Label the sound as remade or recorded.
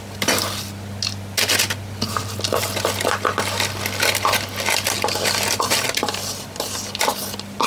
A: recorded